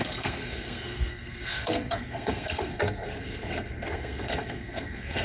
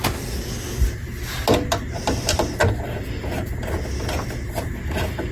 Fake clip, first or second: first